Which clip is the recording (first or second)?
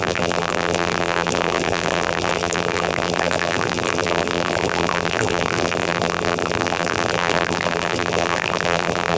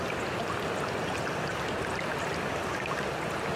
second